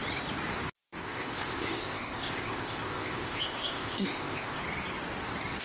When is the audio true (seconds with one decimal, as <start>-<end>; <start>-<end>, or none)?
0.0-1.0; 4.6-5.6